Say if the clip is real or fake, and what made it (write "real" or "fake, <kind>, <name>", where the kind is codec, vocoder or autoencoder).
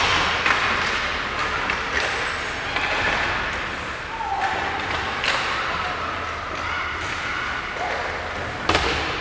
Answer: real